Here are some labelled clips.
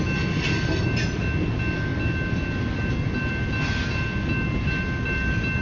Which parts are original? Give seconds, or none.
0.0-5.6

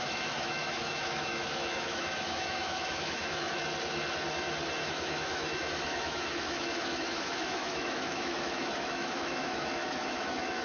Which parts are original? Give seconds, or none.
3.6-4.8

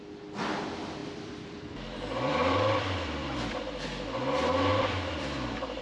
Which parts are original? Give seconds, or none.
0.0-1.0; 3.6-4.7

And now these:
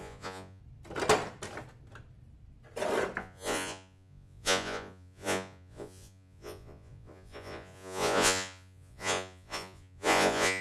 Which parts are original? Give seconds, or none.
0.6-3.2

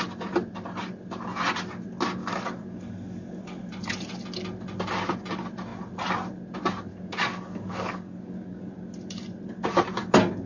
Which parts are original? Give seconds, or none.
0.0-2.2; 3.7-6.9; 8.7-10.5

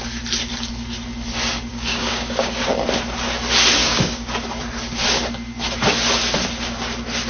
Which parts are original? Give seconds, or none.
0.0-1.7; 2.6-3.8; 4.3-7.3

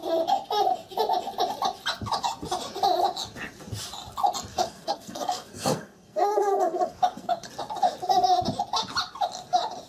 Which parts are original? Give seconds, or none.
0.0-4.5; 7.5-9.9